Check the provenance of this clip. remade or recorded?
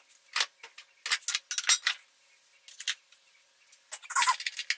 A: recorded